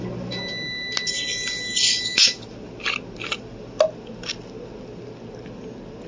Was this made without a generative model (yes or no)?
yes